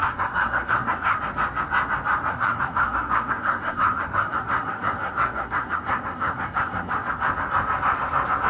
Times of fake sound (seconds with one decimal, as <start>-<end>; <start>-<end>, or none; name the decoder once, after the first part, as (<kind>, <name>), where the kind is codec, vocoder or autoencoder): 0.0-1.2 (codec, SNAC); 2.3-7.1